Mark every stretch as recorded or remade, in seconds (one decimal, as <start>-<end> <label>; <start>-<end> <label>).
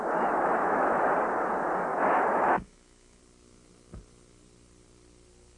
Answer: 0.0-0.6 recorded; 0.6-1.1 remade; 1.1-1.9 recorded; 1.9-3.2 remade; 3.2-5.6 recorded